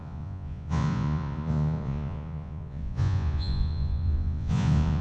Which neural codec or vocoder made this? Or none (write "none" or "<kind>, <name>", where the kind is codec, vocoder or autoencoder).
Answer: vocoder, Vocos